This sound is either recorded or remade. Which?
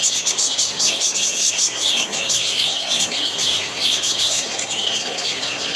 remade